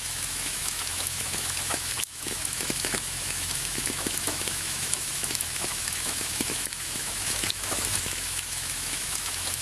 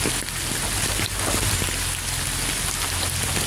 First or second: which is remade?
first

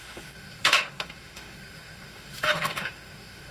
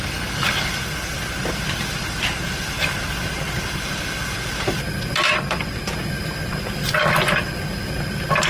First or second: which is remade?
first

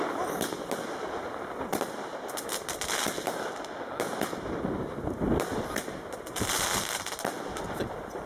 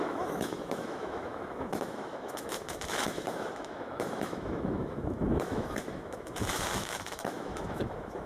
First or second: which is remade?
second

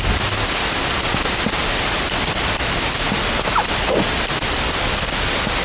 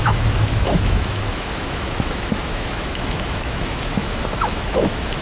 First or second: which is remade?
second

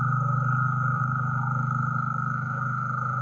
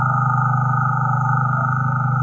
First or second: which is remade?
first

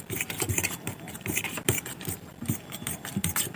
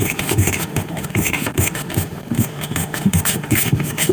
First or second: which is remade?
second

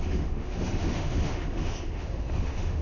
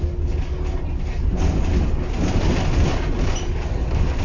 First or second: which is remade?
first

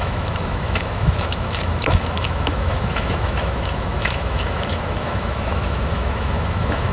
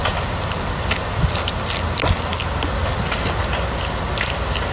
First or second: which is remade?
first